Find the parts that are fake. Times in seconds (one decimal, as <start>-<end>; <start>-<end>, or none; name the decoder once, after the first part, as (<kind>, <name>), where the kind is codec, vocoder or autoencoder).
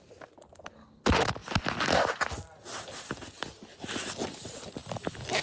none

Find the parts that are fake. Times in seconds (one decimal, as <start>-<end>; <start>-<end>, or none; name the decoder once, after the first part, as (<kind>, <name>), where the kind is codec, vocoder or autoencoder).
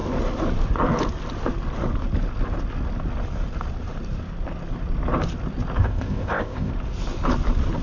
5.8-6.7 (codec, ZipCodec)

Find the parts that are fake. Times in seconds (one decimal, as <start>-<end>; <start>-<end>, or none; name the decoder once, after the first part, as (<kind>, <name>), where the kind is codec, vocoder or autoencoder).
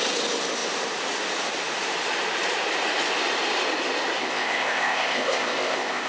4.2-6.1 (codec, ZipCodec)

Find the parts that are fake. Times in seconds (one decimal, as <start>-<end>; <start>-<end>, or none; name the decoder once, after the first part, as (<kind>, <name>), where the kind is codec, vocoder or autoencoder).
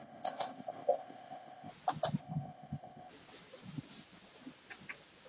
0.0-1.7 (codec, ZipCodec); 2.2-3.1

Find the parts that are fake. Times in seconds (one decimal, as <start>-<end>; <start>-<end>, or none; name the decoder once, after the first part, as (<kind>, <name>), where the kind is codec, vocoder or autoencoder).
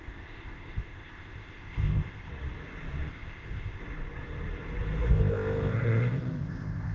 0.0-2.3 (codec, ZipCodec); 3.1-3.8; 5.1-6.9